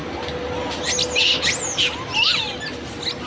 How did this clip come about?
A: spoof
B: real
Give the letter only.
B